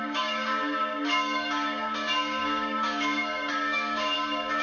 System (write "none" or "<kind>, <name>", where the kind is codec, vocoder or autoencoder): codec, DAC